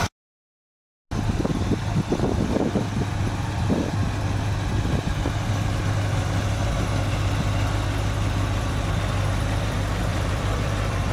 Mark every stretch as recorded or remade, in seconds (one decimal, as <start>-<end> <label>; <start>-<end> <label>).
0.0-10.1 recorded; 10.1-11.1 remade